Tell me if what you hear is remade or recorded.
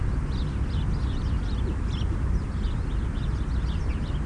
recorded